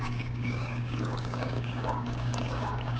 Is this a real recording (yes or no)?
no